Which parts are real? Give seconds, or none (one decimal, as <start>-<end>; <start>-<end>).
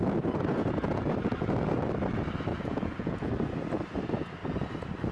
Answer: 0.0-0.5; 1.1-2.5; 3.3-5.1